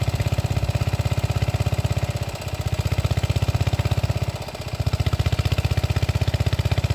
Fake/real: real